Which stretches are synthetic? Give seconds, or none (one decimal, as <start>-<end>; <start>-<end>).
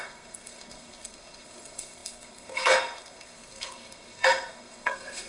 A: 0.0-5.3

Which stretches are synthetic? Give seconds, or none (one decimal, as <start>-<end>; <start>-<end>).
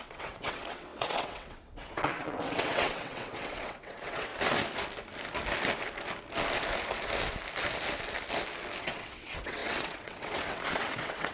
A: 0.0-4.3; 8.8-11.3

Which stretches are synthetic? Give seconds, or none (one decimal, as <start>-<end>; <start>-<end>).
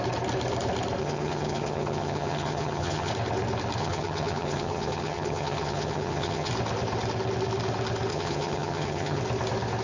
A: 1.0-3.1; 3.8-6.5; 8.1-9.2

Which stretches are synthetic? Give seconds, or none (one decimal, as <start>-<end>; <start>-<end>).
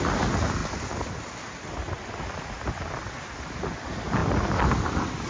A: none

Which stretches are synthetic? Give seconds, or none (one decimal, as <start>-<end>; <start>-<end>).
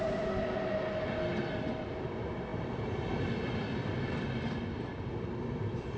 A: none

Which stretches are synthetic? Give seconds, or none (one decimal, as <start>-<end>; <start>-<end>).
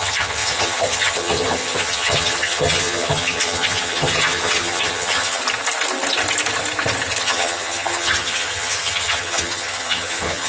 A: 0.0-5.4; 7.2-10.5